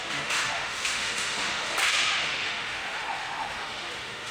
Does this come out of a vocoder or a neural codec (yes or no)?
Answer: yes